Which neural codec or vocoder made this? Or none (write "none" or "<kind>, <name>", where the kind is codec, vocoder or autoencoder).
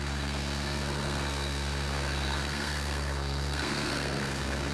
codec, SNAC